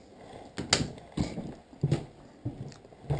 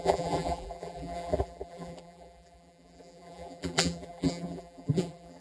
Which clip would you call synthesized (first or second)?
second